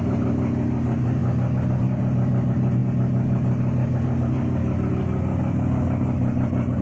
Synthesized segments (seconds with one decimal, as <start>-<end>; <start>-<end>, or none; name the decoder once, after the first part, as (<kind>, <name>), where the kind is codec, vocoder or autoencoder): none